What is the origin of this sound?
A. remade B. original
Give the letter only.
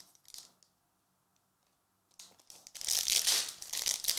B